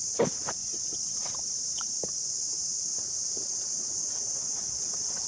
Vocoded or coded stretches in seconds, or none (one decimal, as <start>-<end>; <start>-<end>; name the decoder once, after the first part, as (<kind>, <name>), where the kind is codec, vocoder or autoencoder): 0.6-1.9 (vocoder, WaveNeXt)